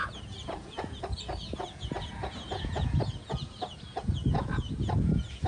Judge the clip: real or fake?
fake